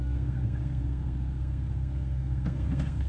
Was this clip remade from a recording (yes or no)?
yes